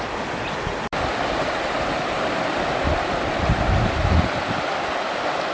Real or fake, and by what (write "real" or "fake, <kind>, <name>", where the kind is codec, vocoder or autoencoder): real